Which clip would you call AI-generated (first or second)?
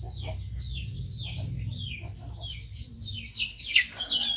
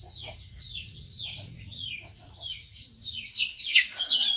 second